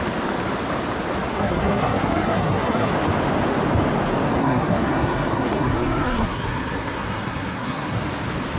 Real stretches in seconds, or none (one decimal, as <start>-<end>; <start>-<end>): 0.0-1.3; 2.9-4.4; 8.0-8.6